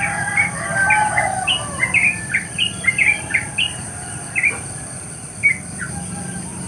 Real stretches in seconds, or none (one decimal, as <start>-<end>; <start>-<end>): 0.0-2.0; 5.5-6.7